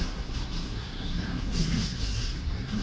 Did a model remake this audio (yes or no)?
yes